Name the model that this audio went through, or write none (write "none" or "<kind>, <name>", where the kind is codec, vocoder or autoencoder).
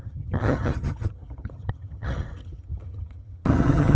vocoder, HiFi-GAN